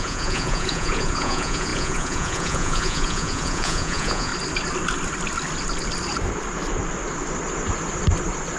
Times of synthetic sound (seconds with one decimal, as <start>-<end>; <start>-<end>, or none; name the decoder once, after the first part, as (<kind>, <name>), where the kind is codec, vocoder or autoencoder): 0.0-4.3 (vocoder, Vocos)